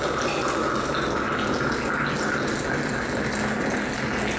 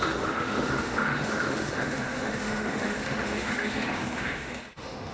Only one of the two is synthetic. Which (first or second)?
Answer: second